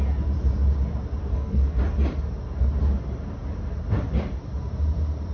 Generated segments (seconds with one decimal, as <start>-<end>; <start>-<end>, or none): 1.2-1.8